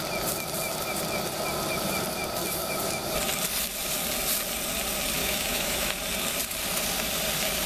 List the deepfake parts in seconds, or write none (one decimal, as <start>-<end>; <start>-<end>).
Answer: 5.2-6.0